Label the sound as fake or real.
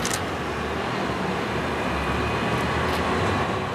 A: real